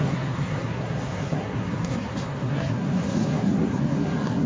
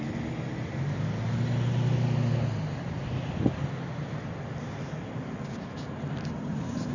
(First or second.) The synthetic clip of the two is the first